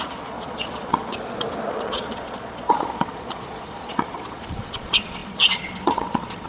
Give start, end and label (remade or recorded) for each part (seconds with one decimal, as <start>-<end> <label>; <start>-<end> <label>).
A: 0.0-1.1 remade; 1.1-1.7 recorded; 1.7-6.5 remade